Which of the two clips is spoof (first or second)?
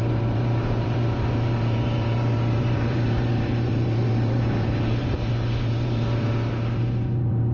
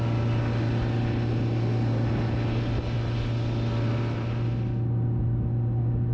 first